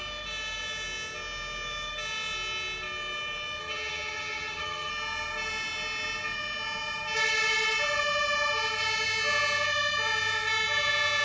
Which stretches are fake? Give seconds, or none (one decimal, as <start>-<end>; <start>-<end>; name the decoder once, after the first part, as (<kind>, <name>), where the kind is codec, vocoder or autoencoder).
3.6-4.9 (vocoder, HiFi-GAN)